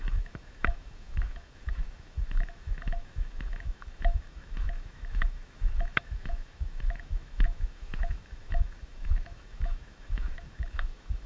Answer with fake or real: fake